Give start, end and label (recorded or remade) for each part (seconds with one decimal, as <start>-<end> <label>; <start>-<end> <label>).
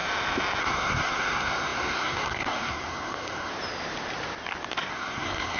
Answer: 0.0-0.6 recorded; 0.6-3.5 remade; 3.5-4.9 recorded; 4.9-5.6 remade